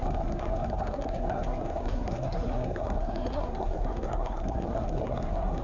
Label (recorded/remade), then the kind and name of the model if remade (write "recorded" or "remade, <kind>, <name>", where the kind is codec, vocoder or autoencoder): remade, codec, SNAC